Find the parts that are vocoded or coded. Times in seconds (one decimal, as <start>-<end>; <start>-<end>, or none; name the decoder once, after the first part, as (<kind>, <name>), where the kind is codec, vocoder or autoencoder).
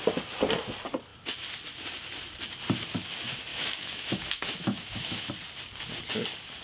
3.5-5.3 (autoencoder, DAC-VAE)